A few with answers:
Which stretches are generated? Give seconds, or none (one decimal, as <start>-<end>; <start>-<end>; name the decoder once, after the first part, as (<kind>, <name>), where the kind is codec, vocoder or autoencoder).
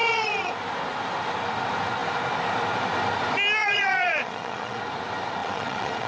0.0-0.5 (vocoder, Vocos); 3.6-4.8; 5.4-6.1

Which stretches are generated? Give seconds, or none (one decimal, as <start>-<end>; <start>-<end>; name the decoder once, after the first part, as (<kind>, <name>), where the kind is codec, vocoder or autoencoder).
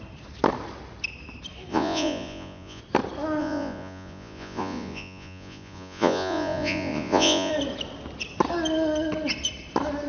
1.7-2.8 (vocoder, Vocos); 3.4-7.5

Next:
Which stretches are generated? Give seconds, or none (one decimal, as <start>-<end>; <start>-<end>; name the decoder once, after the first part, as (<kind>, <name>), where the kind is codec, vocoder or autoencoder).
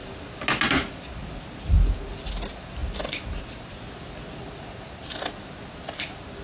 none